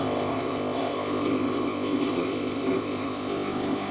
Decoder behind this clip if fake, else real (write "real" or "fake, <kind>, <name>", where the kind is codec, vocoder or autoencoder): fake, codec, ZipCodec